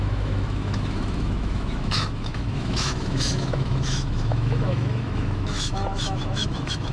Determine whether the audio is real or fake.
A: fake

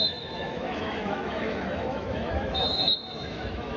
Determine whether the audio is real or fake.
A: fake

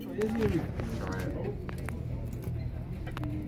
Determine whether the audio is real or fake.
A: real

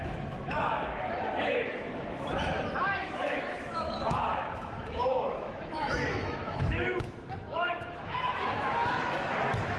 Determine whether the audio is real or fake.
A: fake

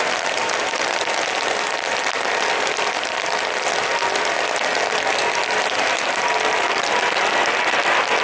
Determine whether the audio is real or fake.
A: real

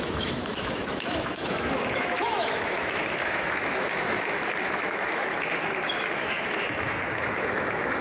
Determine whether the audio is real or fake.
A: fake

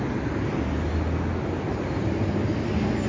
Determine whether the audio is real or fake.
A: real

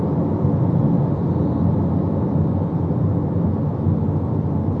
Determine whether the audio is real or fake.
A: real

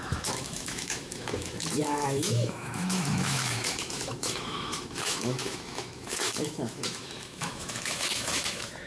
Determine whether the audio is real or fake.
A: fake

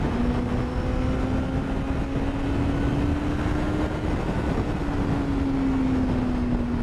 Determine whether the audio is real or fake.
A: real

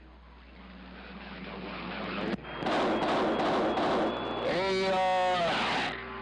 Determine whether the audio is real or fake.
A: real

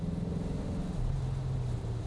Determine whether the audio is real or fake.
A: real